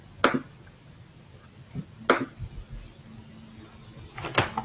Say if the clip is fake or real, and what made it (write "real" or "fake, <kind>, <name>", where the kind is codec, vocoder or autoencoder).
real